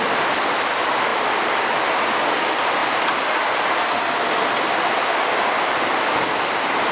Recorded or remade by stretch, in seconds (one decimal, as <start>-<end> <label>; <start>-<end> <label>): 0.0-6.9 recorded